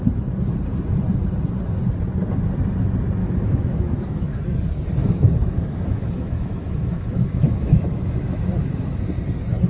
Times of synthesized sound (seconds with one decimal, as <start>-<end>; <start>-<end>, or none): 3.2-4.4; 5.0-9.0